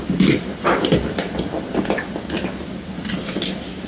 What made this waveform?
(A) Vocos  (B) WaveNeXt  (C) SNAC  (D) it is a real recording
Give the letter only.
D